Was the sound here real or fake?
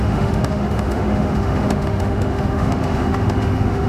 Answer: fake